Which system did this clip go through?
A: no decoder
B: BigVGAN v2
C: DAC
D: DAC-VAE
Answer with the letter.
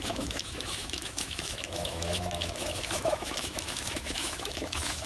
D